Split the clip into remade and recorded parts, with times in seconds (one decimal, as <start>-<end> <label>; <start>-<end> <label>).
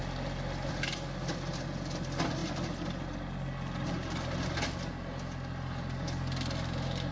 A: 0.0-7.1 recorded